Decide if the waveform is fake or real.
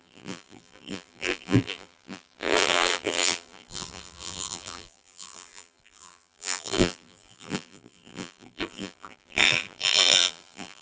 fake